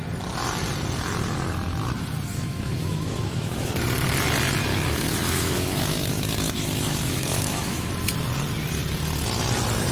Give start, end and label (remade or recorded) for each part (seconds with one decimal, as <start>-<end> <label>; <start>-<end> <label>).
0.0-2.3 recorded; 2.3-3.7 remade; 3.7-4.7 recorded; 4.7-7.9 remade; 7.9-9.9 recorded